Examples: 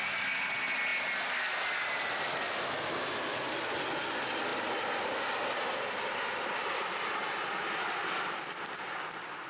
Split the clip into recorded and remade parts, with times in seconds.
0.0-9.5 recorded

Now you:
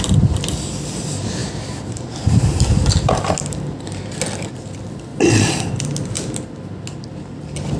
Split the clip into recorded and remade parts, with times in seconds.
0.0-1.4 recorded; 1.4-2.6 remade; 2.6-5.1 recorded; 5.1-5.7 remade; 5.7-7.8 recorded